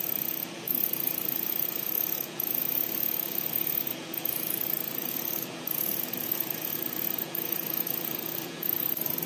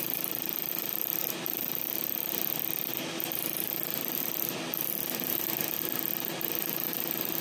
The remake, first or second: first